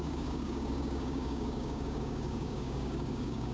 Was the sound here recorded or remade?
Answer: remade